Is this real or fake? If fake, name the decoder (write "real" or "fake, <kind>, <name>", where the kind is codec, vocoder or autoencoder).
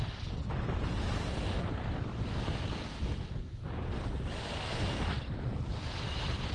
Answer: real